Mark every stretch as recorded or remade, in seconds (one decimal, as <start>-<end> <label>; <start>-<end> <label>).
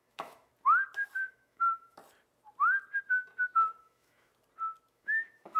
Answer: 0.0-0.5 remade; 0.5-1.3 recorded; 1.3-2.0 remade; 2.0-3.8 recorded; 3.8-4.3 remade; 4.3-4.9 recorded; 4.9-5.6 remade